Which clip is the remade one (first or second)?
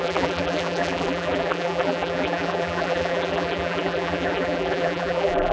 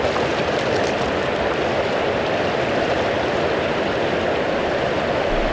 first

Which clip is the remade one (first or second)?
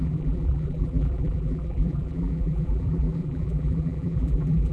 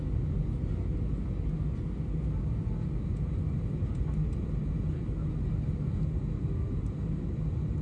first